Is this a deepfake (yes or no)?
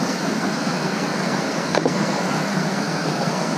yes